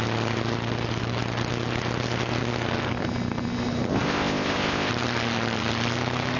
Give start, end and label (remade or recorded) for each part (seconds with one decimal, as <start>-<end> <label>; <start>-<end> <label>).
0.0-3.9 recorded; 3.9-4.9 remade; 4.9-6.4 recorded